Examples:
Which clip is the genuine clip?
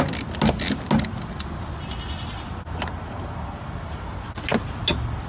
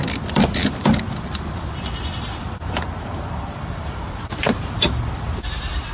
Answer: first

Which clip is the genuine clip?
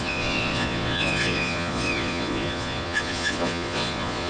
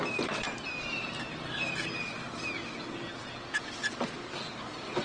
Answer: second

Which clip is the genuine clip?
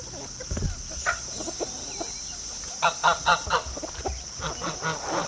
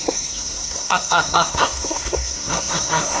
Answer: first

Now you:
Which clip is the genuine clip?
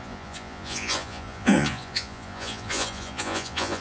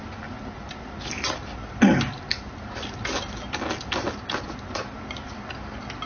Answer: second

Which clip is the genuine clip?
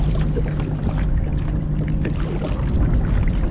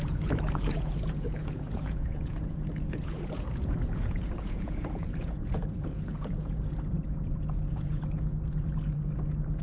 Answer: first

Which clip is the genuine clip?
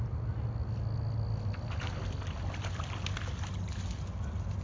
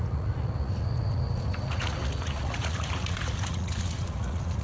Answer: first